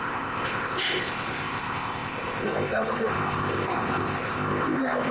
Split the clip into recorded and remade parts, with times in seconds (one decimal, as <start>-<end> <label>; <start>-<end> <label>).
0.0-5.1 remade